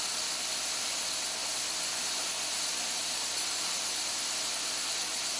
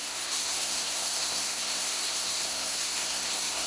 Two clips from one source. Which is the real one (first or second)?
first